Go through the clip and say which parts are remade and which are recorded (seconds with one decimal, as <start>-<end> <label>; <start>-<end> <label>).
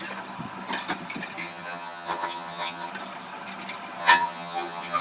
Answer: 0.0-1.4 recorded; 1.4-2.9 remade; 2.9-4.0 recorded; 4.0-5.0 remade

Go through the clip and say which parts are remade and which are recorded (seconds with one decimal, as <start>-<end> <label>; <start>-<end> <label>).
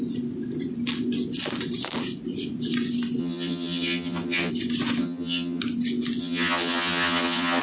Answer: 0.0-3.2 recorded; 3.2-4.5 remade; 4.5-5.0 recorded; 5.0-5.6 remade; 5.6-6.2 recorded; 6.2-7.6 remade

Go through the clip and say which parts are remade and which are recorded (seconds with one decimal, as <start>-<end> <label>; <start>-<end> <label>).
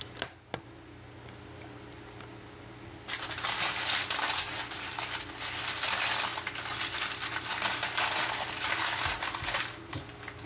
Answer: 0.0-10.5 recorded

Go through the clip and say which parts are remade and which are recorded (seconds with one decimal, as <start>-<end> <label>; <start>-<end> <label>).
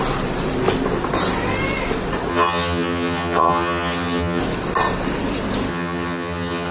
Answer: 0.0-2.3 recorded; 2.3-4.4 remade; 4.4-5.7 recorded; 5.7-6.7 remade